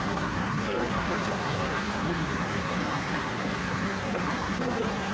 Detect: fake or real fake